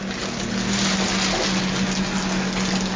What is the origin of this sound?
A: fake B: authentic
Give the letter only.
B